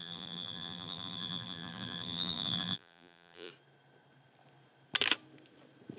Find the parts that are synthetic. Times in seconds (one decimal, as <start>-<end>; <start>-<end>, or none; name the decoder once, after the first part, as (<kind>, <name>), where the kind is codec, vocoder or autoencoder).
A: 0.0-3.5 (vocoder, BigVGAN v2)